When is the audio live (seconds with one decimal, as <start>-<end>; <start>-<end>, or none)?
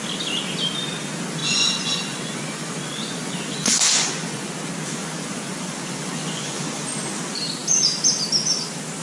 0.0-1.4; 4.5-5.0; 6.6-9.0